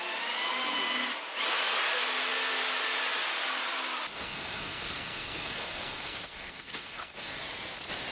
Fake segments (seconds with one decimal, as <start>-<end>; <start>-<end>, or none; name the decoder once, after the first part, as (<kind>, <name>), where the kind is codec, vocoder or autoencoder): 4.1-7.4 (codec, SNAC)